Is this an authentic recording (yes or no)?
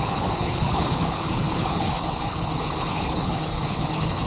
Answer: no